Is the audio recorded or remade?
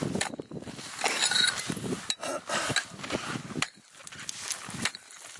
recorded